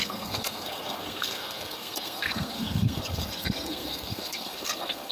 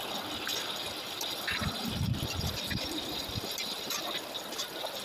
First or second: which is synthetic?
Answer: first